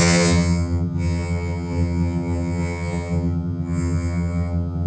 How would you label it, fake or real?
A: fake